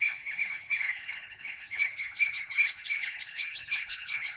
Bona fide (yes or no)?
no